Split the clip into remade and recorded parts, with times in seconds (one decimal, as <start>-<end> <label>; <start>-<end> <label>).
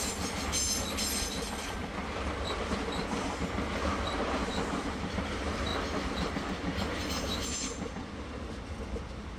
0.0-9.4 recorded